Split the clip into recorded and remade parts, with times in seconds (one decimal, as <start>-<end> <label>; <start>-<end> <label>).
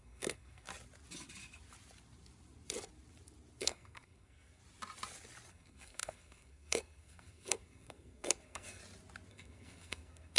0.0-0.7 remade; 0.7-3.6 recorded; 3.6-4.6 remade; 4.6-5.5 recorded; 5.5-8.8 remade; 8.8-9.3 recorded; 9.3-10.4 remade